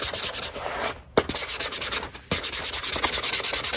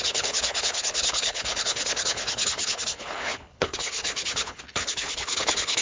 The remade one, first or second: second